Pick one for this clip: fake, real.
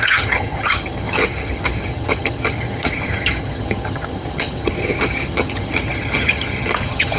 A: fake